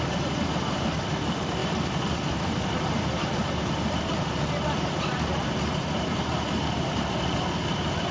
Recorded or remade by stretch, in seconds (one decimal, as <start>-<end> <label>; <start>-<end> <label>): 0.0-1.6 remade; 1.6-2.1 recorded; 2.1-8.1 remade